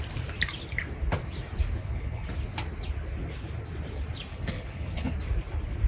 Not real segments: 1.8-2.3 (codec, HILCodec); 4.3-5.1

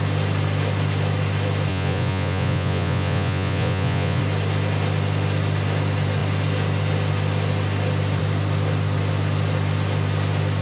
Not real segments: 1.7-4.2 (vocoder, Vocos)

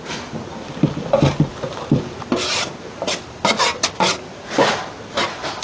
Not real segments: 1.5-3.2 (vocoder, BigVGAN v2); 3.7-5.6

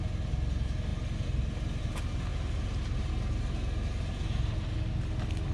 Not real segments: 2.3-3.1 (vocoder, BigVGAN v2)

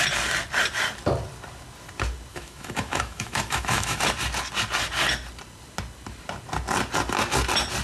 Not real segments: 2.3-4.0 (autoencoder, DAC-VAE)

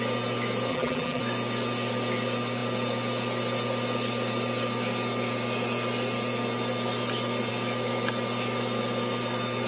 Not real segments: 0.7-1.2 (vocoder, BigVGAN v2)

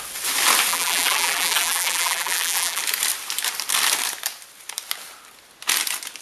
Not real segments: 0.7-2.8 (vocoder, BigVGAN v2)

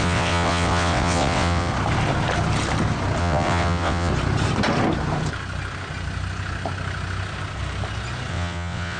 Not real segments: 0.0-1.7 (vocoder, WaveNeXt); 3.2-4.1; 8.3-9.0